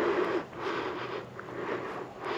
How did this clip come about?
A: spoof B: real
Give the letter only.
B